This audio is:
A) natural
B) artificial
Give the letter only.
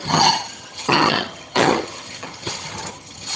B